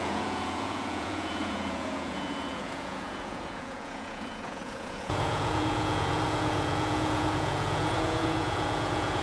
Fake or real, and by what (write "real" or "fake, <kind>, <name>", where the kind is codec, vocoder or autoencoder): fake, vocoder, Vocos